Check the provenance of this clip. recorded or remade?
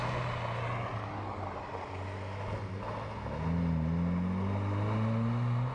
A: recorded